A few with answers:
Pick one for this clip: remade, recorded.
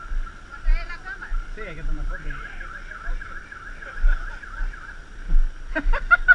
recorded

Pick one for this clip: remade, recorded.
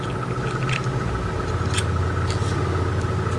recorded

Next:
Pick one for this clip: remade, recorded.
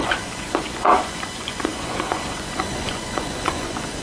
remade